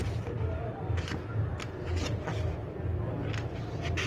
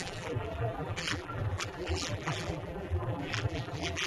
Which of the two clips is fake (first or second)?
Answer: second